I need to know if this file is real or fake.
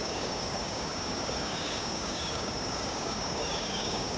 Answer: fake